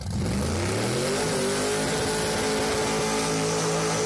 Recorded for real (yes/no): yes